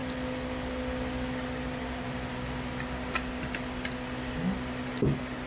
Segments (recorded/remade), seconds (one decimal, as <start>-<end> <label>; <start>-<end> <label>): 0.0-5.5 recorded